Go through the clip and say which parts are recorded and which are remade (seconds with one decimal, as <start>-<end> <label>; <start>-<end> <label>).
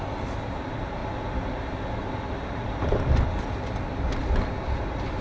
0.0-5.2 recorded